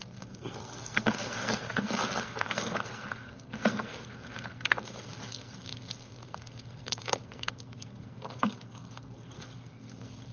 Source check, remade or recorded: remade